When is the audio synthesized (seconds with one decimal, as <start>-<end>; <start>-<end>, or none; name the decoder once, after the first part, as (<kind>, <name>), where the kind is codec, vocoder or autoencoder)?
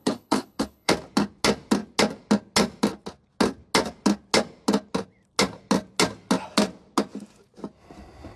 0.0-0.9 (codec, HILCodec)